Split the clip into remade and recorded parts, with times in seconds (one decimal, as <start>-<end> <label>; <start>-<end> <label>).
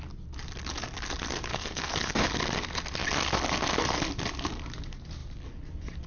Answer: 0.0-1.5 recorded; 1.5-2.1 remade; 2.1-6.1 recorded